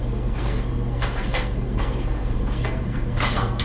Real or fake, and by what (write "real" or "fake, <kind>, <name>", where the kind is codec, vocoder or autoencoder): fake, codec, SNAC